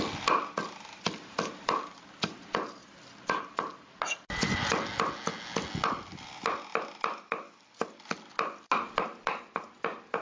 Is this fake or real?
real